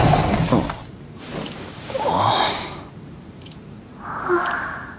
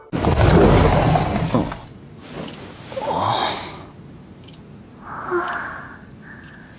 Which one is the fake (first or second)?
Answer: first